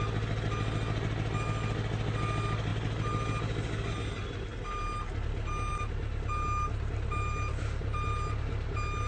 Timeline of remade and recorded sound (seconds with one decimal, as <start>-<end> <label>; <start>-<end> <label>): 0.0-9.1 recorded